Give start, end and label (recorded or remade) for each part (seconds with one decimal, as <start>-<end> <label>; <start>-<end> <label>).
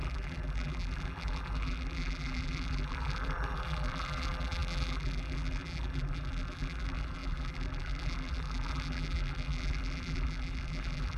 0.0-11.2 remade